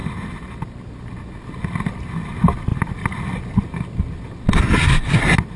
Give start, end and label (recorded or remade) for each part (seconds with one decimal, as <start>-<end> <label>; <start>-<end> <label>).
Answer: 0.0-5.6 recorded